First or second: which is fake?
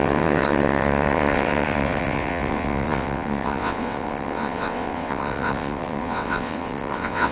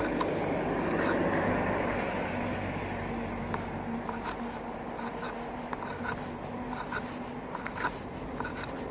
first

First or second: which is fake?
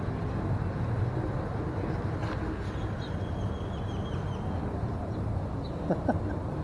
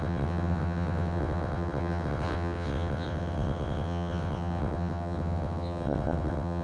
second